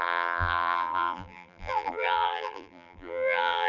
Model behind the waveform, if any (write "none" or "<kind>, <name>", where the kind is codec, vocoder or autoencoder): vocoder, BigVGAN v2